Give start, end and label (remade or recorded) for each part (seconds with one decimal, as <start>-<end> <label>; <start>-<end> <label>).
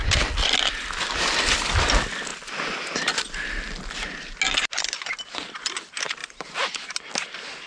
0.0-6.2 recorded; 6.2-7.0 remade; 7.0-7.7 recorded